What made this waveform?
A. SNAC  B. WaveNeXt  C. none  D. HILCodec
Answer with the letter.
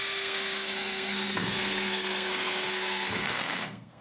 A